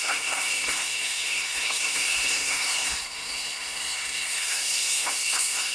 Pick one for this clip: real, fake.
fake